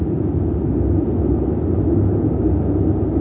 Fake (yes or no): no